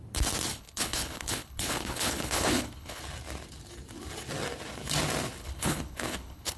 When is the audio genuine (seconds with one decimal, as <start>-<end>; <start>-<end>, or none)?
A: 0.0-0.5; 3.0-5.4